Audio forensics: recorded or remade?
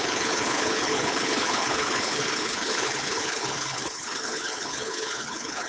remade